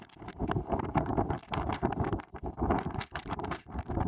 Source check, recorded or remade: remade